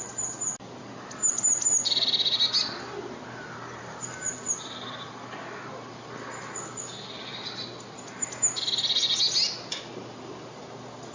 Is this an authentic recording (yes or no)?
yes